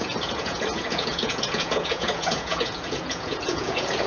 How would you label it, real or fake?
fake